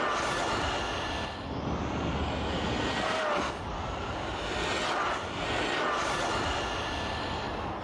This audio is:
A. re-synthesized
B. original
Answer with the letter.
B